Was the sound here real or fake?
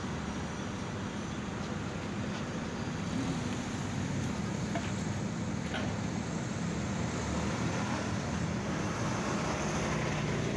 fake